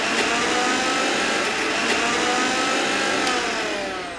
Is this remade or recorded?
recorded